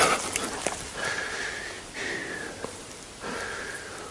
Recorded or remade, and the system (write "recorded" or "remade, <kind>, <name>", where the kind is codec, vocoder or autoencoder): recorded